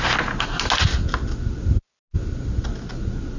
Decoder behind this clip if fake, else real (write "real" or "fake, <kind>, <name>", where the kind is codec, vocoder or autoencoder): real